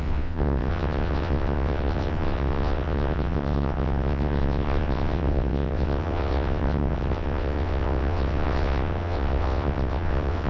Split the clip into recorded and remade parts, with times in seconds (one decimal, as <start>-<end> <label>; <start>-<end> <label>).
0.0-10.5 remade